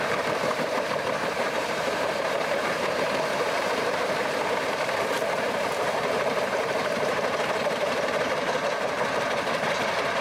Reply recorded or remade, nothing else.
remade